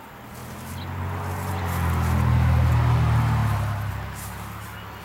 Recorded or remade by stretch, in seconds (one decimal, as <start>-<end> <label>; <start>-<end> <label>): 0.0-5.0 recorded